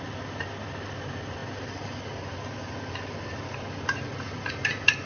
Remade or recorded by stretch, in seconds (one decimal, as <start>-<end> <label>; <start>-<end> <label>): 0.0-5.1 recorded